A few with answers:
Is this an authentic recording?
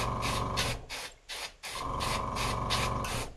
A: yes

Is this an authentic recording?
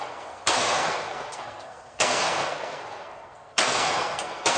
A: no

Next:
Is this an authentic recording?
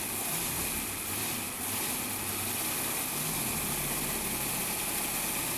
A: yes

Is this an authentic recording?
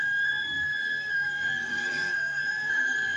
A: no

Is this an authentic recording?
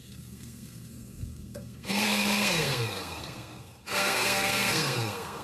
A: no